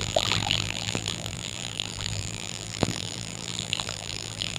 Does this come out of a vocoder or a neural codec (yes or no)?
yes